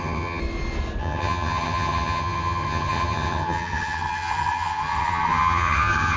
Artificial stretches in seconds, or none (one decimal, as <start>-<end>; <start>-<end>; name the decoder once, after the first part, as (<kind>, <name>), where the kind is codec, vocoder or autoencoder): 0.0-0.4 (vocoder, HiFi-GAN); 1.0-6.2